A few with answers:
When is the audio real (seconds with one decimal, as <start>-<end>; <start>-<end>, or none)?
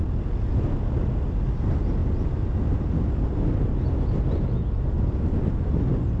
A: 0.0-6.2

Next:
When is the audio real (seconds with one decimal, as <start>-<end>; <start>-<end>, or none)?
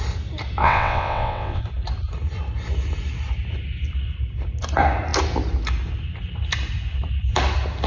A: 0.0-0.6; 1.6-7.9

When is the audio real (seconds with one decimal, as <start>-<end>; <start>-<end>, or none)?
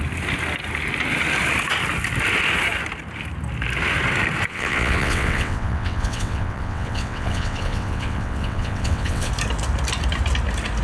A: 0.0-4.5; 9.3-10.8